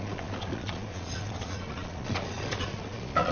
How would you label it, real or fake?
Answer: fake